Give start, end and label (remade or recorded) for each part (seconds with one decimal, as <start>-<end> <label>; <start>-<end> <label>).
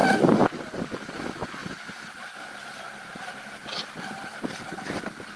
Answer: 0.0-1.6 recorded; 1.6-4.8 remade; 4.8-5.4 recorded